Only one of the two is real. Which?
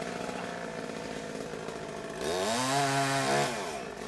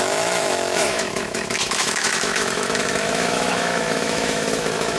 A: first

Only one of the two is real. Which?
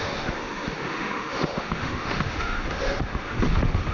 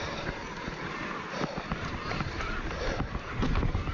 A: second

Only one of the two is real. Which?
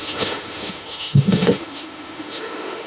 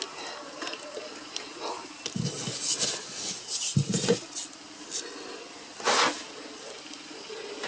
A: second